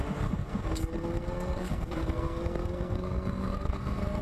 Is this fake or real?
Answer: fake